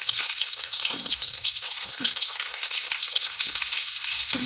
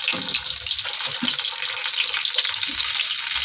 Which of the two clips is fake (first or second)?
first